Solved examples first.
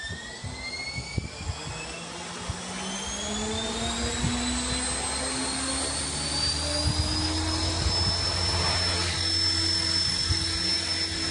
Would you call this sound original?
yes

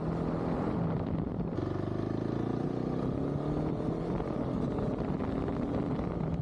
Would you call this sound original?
yes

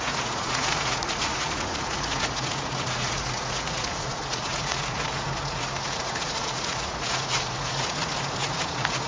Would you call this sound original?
no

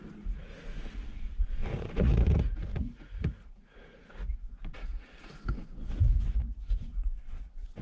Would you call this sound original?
no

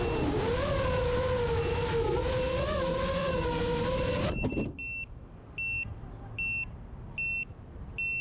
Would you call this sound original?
yes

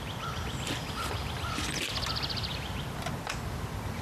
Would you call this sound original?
yes